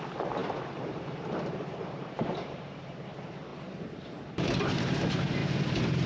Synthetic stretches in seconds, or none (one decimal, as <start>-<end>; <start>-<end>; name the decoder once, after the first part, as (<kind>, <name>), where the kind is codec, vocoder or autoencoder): 0.0-5.4 (vocoder, BigVGAN v2)

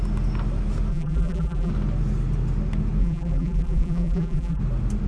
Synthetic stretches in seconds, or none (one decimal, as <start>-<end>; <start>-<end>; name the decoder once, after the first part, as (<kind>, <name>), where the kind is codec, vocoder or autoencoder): 0.9-1.7 (vocoder, BigVGAN v2); 3.0-4.6

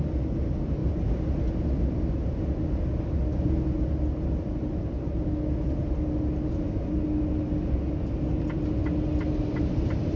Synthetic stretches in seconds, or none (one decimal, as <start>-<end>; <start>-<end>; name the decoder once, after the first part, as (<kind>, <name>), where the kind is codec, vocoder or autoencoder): 8.8-10.2 (vocoder, BigVGAN v2)

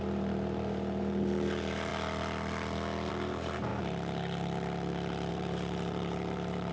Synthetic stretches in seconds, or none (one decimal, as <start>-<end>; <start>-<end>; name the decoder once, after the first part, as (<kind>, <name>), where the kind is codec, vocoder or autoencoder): 0.0-1.9 (vocoder, BigVGAN v2); 3.1-3.7; 5.3-6.7

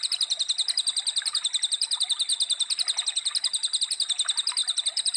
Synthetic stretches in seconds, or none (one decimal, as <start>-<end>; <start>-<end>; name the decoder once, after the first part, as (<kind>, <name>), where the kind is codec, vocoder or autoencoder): 0.0-2.3 (vocoder, BigVGAN v2); 3.8-5.2